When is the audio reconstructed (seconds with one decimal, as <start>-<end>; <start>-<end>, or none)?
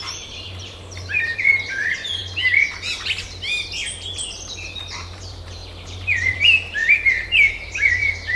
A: 0.0-2.2; 4.8-8.4